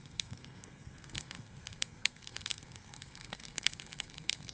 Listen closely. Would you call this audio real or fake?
fake